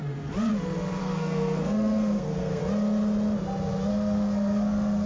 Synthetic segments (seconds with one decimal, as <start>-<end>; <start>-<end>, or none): 1.0-2.6; 3.9-5.1